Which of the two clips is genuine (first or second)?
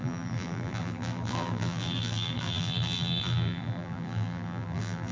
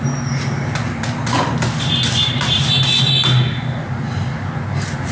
second